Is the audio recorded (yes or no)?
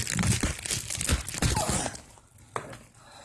yes